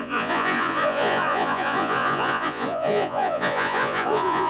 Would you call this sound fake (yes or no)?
yes